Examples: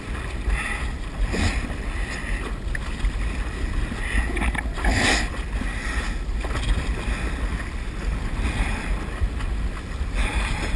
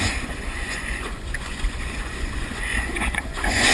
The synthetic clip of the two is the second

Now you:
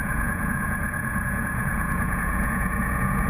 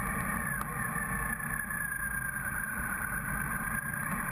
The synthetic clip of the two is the first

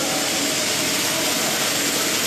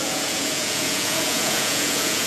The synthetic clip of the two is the second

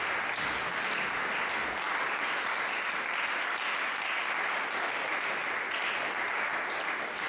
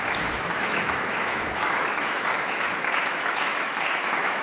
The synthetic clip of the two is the second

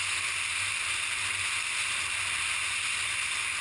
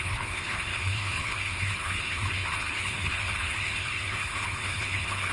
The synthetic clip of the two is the second